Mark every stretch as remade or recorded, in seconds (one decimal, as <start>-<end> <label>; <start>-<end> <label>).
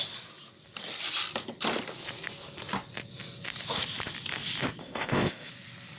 0.0-4.8 recorded; 4.8-5.5 remade; 5.5-6.0 recorded